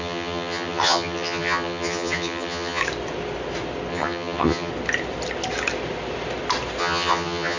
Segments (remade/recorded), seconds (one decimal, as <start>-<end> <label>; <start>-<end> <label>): 0.0-2.8 remade; 2.8-3.9 recorded; 3.9-4.7 remade; 4.7-6.8 recorded; 6.8-7.6 remade